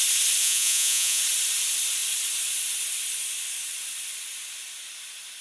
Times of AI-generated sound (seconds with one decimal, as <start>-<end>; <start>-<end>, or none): 0.4-1.2